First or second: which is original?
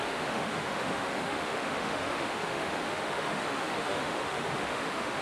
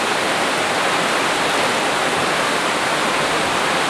second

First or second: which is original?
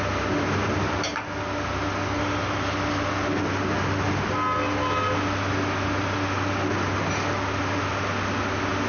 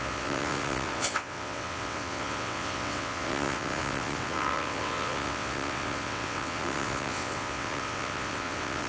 first